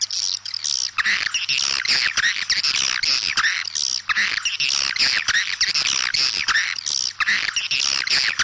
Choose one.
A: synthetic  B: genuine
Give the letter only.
B